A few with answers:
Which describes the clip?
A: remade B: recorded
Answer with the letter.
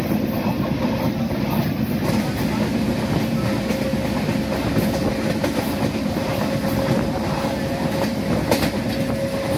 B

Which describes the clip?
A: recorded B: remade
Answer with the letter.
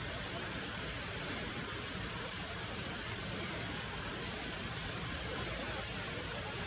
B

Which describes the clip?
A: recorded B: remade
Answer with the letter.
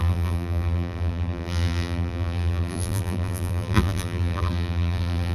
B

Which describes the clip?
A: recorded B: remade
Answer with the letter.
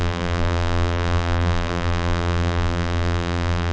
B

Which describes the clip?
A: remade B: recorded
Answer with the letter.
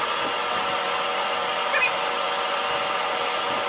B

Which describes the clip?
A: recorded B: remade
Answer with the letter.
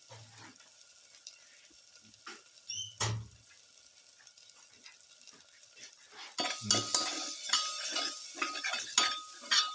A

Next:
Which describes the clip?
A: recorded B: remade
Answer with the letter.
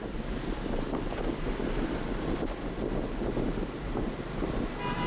A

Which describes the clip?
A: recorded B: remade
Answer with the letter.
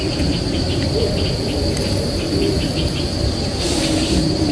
B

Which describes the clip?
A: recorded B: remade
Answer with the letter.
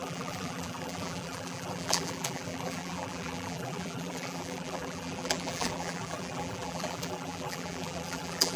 B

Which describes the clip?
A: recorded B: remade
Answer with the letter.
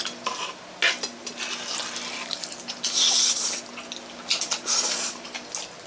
A